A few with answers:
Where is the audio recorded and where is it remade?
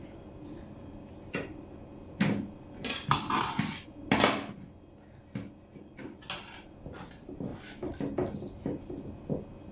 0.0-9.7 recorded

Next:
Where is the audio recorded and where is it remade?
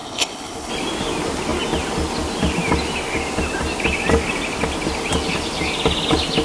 0.0-0.7 remade; 0.7-6.4 recorded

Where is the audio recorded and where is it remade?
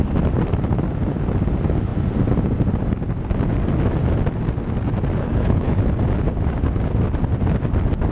0.0-5.2 recorded; 5.2-5.8 remade; 5.8-8.1 recorded